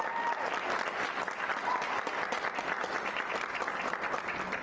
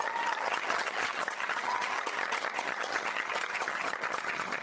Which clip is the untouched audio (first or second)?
first